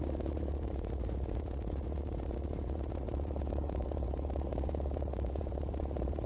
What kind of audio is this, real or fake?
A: fake